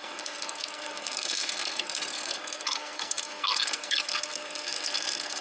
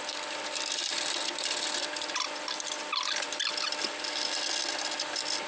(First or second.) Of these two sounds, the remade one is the first